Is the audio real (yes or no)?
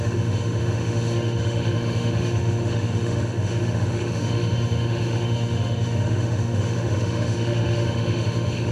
no